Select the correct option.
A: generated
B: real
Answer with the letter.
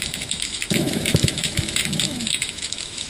A